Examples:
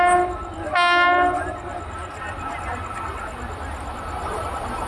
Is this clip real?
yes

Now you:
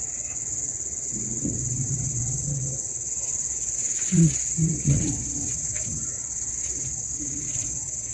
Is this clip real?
no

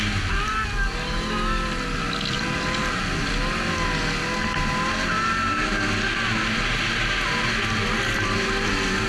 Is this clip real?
yes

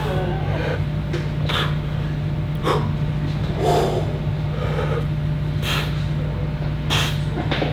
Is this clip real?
yes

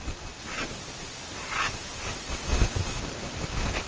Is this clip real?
yes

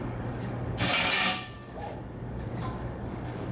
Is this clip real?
no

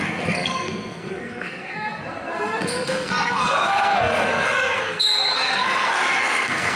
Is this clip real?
no